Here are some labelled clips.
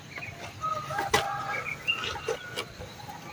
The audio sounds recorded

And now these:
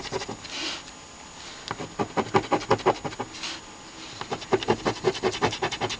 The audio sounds recorded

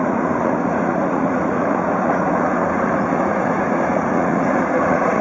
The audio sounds remade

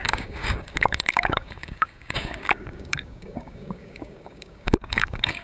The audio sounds remade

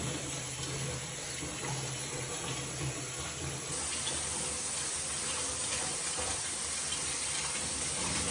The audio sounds recorded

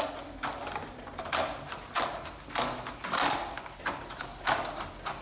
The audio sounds recorded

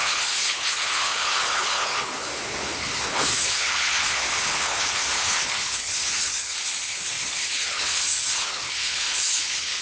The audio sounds remade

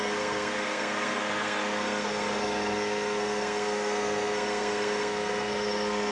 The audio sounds remade